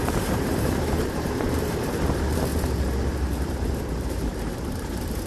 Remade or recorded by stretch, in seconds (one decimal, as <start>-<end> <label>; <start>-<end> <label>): 0.0-2.5 remade; 2.5-3.1 recorded; 3.1-5.3 remade